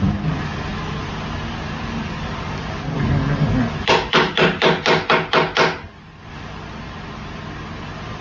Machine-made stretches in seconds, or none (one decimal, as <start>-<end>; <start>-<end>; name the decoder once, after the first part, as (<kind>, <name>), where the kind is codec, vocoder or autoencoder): none